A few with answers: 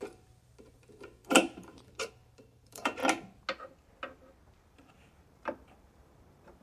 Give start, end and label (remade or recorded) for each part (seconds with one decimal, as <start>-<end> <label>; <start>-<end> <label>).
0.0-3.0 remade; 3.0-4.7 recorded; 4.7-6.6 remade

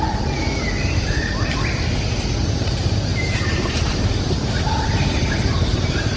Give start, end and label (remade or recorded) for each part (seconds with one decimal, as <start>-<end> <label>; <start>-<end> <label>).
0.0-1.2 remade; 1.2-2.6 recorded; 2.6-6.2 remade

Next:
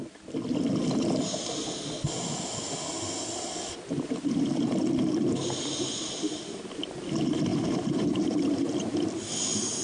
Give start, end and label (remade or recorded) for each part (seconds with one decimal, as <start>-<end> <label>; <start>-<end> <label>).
0.0-7.5 recorded; 7.5-8.7 remade; 8.7-9.8 recorded

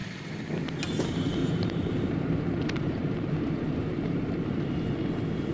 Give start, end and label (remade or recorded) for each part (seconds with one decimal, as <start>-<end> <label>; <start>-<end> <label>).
0.0-1.4 recorded; 1.4-4.7 remade; 4.7-5.5 recorded